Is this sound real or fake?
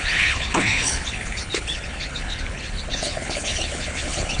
fake